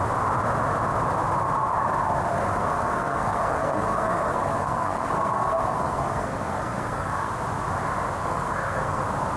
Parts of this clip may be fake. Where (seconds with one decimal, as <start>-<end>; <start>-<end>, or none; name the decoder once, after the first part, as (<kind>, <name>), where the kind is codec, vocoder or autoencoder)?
2.3-7.3 (codec, SNAC); 8.2-9.0

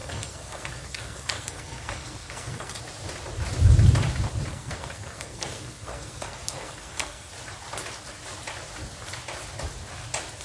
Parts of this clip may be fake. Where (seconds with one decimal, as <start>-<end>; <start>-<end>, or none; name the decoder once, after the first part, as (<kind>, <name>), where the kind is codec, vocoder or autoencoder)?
0.0-2.8 (codec, SNAC); 4.5-7.3

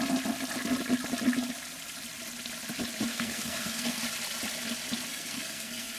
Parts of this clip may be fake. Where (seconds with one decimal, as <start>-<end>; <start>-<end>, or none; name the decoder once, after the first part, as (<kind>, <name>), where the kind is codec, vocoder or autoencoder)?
3.1-4.0 (codec, SNAC); 5.1-6.0

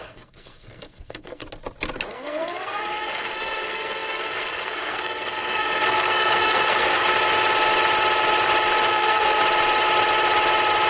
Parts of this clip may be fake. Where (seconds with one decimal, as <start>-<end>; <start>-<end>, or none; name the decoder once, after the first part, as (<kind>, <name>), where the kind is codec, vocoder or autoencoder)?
0.0-1.4 (codec, SNAC); 2.1-7.1; 8.9-9.4

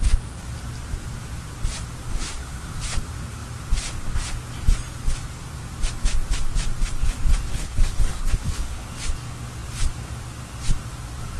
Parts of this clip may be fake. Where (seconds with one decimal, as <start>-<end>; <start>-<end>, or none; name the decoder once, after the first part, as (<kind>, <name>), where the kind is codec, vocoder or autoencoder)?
2.1-2.7 (codec, SNAC); 7.5-8.9

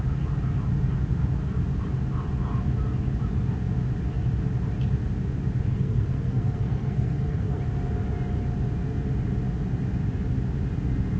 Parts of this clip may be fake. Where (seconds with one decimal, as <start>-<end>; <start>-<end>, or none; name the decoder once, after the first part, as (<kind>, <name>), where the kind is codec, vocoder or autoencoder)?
5.7-7.6 (codec, SNAC)

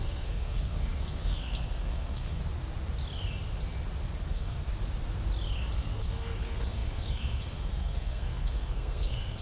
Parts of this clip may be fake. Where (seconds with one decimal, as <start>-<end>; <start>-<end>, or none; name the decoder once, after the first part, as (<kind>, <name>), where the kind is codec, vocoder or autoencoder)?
0.0-2.4 (codec, SNAC); 4.3-4.7; 5.7-9.4

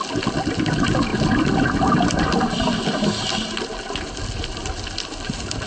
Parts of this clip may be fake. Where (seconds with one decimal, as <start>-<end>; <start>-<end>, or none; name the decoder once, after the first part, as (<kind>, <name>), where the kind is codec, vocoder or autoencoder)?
none